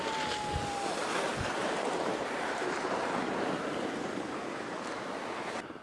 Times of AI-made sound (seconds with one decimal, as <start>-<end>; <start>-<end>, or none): 1.3-4.4

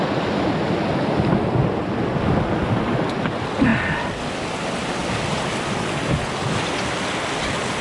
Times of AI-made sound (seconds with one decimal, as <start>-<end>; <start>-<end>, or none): none

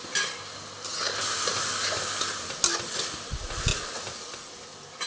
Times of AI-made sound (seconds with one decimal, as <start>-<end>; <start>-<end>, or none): none

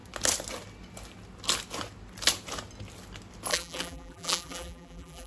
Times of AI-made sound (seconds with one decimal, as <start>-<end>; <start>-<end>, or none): 3.5-5.3

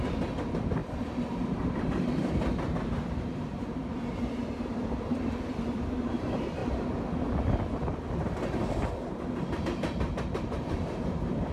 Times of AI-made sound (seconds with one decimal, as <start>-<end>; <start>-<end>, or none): 0.0-6.6; 9.6-11.5

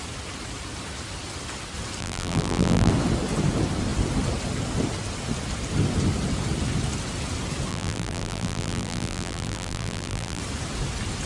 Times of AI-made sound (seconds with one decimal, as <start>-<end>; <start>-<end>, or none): 2.0-2.9; 7.7-10.4

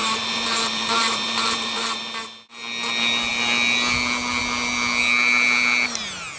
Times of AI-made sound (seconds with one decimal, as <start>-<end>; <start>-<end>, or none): 0.0-2.0

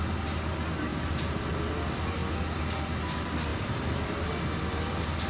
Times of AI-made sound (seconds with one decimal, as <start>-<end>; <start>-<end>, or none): 0.9-1.6; 3.5-4.3